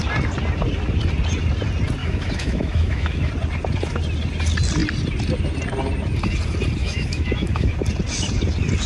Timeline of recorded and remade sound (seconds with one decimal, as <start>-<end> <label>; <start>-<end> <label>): 0.0-2.0 recorded; 2.0-3.3 remade; 3.3-6.8 recorded; 6.8-7.7 remade; 7.7-8.9 recorded